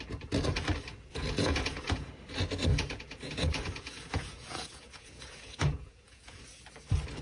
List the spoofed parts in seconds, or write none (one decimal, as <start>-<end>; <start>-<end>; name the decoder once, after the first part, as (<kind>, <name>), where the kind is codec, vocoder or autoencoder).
1.1-2.1 (vocoder, Vocos); 2.7-6.4